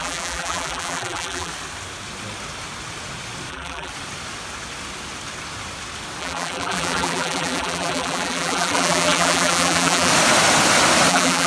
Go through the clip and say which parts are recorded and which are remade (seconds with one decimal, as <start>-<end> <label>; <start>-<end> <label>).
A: 0.0-1.5 remade; 1.5-3.5 recorded; 3.5-3.9 remade; 3.9-6.2 recorded; 6.2-10.1 remade; 10.1-11.1 recorded; 11.1-11.5 remade